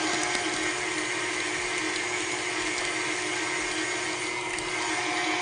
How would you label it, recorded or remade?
recorded